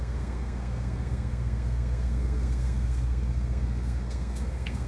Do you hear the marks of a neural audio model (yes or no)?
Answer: yes